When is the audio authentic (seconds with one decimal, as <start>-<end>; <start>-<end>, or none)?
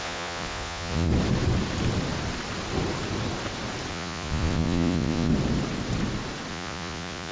1.1-3.9; 5.3-6.5